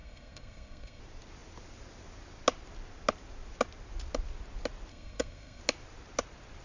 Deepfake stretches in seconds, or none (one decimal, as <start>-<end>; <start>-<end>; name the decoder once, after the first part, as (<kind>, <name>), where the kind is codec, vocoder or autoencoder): 0.0-1.0 (codec, SNAC); 4.9-5.6